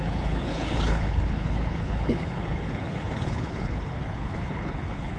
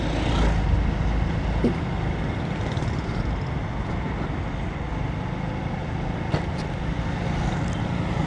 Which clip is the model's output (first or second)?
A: first